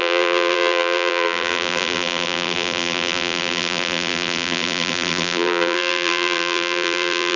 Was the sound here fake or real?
fake